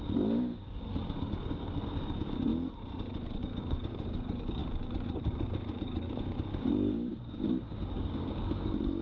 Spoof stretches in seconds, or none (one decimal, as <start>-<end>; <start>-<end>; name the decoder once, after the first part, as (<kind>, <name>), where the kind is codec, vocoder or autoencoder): 0.0-2.5 (codec, DAC); 3.4-9.0